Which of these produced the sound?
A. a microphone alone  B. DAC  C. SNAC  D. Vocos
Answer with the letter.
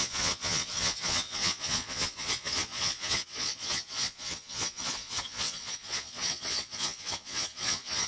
D